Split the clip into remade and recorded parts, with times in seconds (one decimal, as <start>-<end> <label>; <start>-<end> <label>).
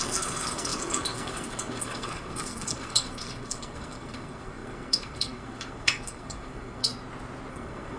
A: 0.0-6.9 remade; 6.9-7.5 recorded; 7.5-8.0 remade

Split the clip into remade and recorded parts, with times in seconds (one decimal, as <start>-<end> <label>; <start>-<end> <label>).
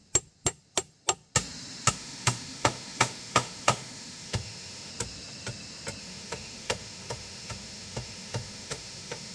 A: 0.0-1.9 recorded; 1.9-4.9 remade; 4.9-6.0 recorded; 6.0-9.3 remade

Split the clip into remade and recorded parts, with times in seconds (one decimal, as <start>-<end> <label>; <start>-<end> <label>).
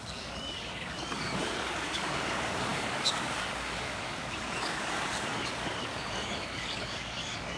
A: 0.0-7.6 remade